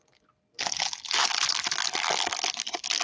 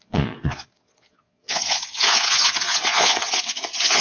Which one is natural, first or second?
first